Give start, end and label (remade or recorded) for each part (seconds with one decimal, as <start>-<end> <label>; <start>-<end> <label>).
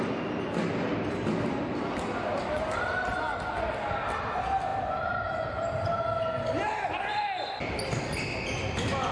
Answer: 0.0-9.1 recorded